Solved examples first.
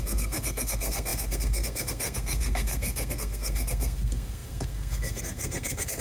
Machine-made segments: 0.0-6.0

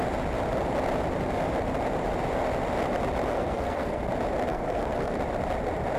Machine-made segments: 3.3-4.1; 4.5-5.2

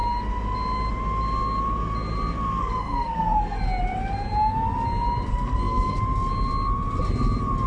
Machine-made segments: 2.6-3.6; 5.3-6.0

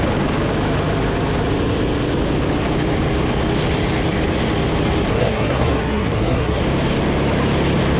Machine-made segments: 5.1-6.6

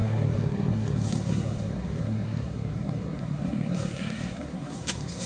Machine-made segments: 0.0-5.3

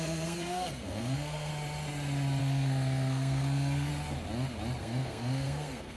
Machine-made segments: 0.0-1.5; 2.4-3.9; 4.8-6.0

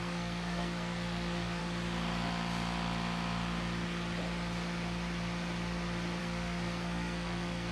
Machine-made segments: 0.0-1.6; 6.2-7.7